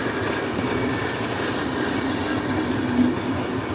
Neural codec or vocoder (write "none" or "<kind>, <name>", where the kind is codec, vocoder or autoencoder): none